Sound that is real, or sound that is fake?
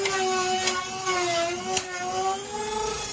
real